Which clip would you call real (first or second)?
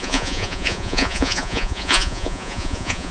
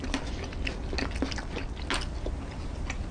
second